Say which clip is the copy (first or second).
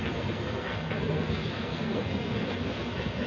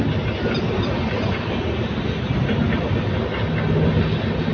first